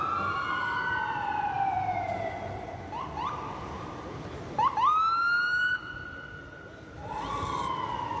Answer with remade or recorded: recorded